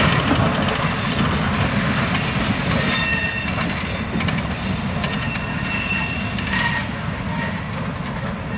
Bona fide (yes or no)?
yes